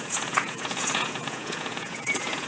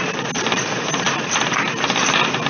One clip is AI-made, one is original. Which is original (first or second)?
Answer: second